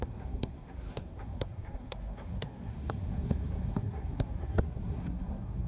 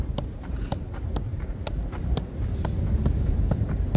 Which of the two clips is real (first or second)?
second